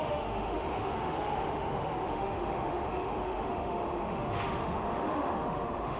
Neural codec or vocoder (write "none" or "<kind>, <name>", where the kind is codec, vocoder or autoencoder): autoencoder, DAC-VAE